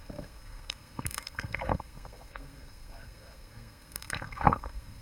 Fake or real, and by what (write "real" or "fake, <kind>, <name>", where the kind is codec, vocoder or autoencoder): fake, codec, SNAC